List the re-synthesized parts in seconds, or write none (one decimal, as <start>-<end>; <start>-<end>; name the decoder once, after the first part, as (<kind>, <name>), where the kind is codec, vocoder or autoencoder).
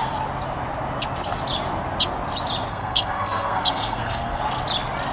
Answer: 2.7-4.4 (codec, SNAC)